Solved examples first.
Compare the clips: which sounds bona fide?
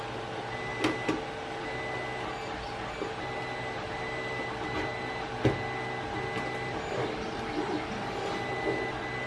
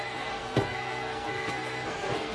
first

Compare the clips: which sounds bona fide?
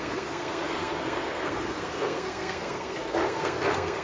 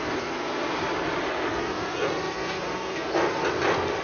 second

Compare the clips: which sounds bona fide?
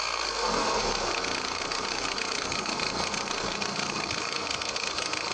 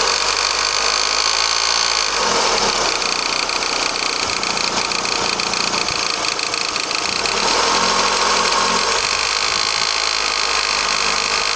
second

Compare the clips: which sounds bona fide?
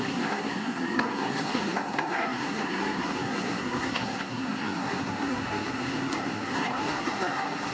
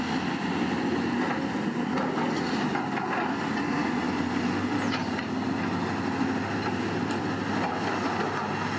second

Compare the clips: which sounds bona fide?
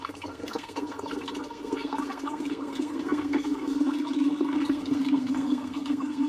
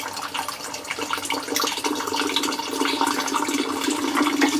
second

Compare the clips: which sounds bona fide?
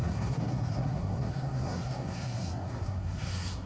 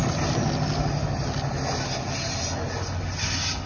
second